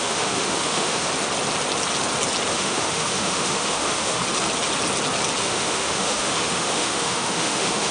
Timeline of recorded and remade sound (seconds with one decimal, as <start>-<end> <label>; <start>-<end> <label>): 0.0-1.1 remade; 1.1-2.5 recorded; 2.5-4.2 remade; 4.2-5.4 recorded; 5.4-7.9 remade